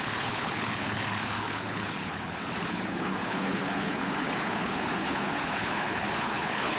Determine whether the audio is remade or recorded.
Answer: remade